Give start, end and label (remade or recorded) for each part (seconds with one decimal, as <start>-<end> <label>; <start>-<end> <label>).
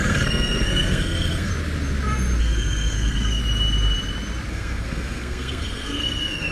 0.0-1.5 remade; 1.5-2.4 recorded; 2.4-3.4 remade; 3.4-4.5 recorded; 4.5-6.5 remade